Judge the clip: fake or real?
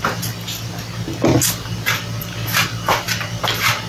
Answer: real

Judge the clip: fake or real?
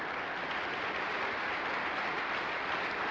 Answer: real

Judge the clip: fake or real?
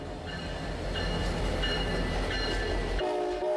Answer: real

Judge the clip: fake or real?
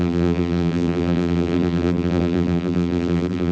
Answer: fake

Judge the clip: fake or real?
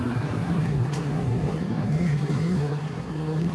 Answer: fake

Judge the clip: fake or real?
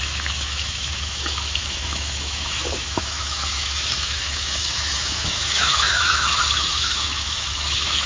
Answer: fake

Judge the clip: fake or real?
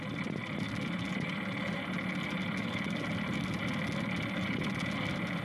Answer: real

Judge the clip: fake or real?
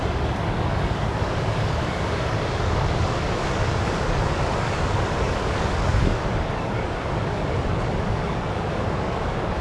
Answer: fake